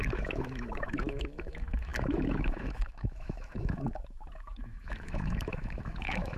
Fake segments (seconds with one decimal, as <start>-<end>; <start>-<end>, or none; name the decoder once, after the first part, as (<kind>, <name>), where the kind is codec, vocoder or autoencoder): 0.0-6.4 (autoencoder, DAC-VAE)